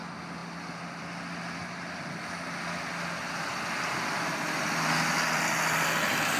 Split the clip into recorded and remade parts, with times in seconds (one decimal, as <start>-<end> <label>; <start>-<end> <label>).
0.0-6.4 recorded